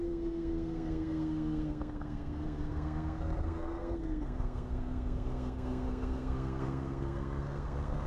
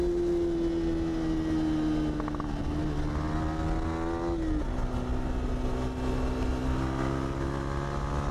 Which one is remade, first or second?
first